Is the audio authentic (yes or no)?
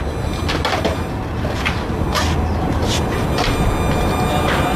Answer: yes